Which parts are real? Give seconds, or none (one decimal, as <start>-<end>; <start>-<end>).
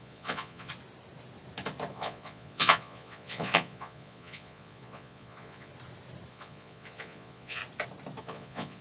0.7-1.9; 5.7-6.3; 7.6-8.2